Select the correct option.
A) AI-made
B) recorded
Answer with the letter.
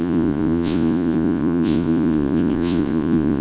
A